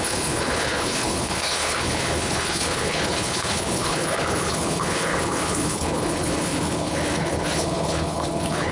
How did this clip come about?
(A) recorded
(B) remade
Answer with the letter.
B